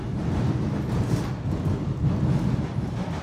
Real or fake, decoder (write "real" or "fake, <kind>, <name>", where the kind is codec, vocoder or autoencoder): real